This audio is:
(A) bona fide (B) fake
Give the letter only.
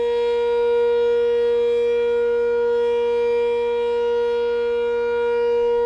A